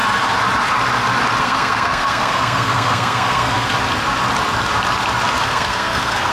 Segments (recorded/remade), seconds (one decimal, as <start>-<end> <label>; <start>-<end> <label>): 0.0-1.4 recorded; 1.4-3.7 remade; 3.7-5.4 recorded; 5.4-6.3 remade